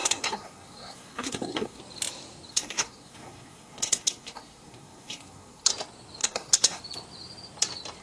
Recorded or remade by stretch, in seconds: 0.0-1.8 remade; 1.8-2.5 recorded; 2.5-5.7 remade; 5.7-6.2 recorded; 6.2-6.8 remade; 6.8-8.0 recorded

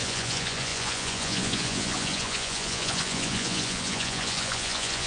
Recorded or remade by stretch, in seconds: 0.0-5.1 remade

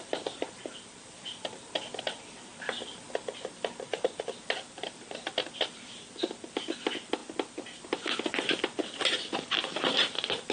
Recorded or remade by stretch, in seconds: 0.0-2.5 remade; 2.5-3.7 recorded; 3.7-7.2 remade; 7.2-9.8 recorded; 9.8-10.5 remade

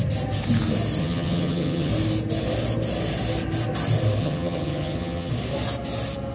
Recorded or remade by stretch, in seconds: 0.0-1.0 recorded; 1.0-1.9 remade; 1.9-4.2 recorded; 4.2-5.3 remade; 5.3-6.3 recorded

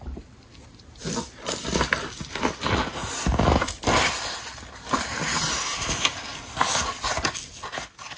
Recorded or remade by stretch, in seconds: 0.0-8.2 recorded

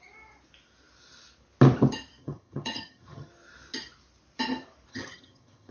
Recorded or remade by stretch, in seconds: 0.0-2.2 recorded; 2.2-3.3 remade; 3.3-4.9 recorded; 4.9-5.7 remade

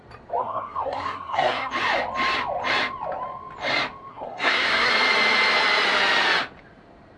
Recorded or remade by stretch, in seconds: 0.0-0.4 recorded; 0.4-1.7 remade; 1.7-4.1 recorded; 4.1-4.9 remade; 4.9-7.2 recorded

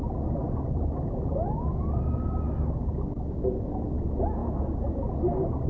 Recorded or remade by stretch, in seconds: 0.0-0.4 recorded; 0.4-2.0 remade; 2.0-5.7 recorded